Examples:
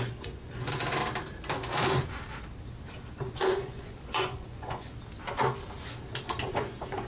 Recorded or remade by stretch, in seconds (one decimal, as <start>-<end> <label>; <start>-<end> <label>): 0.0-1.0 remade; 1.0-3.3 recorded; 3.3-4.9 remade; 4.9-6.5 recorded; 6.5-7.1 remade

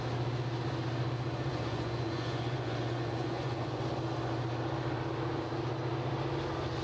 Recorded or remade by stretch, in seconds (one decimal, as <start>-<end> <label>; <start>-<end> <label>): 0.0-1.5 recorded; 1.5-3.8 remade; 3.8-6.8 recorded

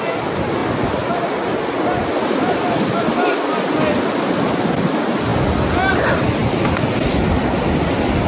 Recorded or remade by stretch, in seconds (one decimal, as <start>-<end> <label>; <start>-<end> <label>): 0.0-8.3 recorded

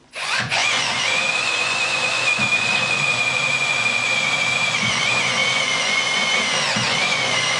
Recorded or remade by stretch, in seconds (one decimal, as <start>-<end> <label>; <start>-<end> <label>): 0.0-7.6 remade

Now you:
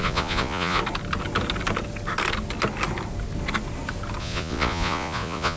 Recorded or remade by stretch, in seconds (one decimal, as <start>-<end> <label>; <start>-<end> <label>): 0.0-0.8 remade; 0.8-4.2 recorded; 4.2-5.6 remade

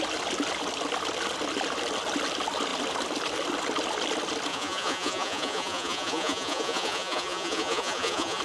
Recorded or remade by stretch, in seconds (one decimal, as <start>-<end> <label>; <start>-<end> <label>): 0.0-4.5 recorded; 4.5-8.4 remade

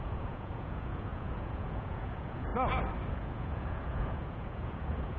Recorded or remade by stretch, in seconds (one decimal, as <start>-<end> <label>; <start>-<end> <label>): 0.0-2.5 remade; 2.5-3.1 recorded; 3.1-5.2 remade